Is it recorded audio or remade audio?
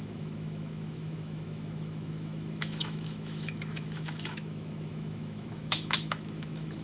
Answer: remade